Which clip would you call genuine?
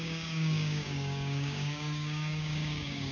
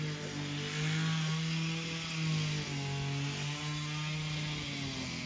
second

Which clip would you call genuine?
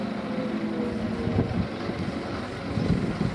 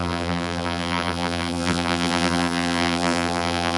first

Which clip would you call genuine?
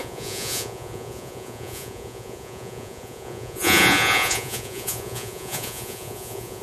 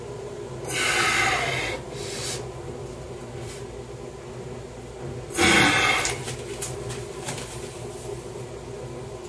second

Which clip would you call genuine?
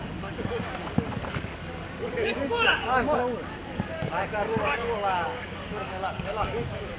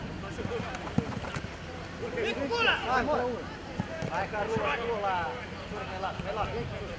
second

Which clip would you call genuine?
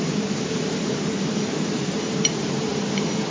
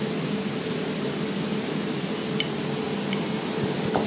second